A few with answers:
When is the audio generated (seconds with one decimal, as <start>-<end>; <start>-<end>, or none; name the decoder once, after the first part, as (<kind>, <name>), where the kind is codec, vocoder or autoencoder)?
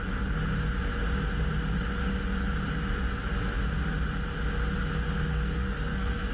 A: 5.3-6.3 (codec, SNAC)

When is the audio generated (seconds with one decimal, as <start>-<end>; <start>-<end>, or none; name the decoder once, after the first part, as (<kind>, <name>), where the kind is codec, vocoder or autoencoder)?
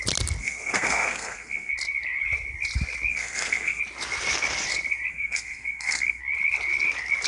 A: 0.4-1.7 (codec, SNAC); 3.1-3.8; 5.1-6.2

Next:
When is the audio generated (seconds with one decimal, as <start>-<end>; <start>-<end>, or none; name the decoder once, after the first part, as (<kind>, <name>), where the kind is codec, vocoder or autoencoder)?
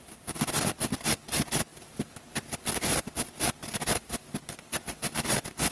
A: none